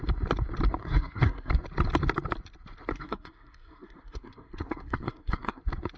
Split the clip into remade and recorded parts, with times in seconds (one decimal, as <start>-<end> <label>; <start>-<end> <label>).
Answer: 0.0-0.8 recorded; 0.8-1.5 remade; 1.5-2.9 recorded; 2.9-5.6 remade; 5.6-6.0 recorded